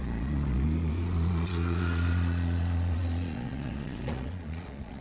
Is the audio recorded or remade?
remade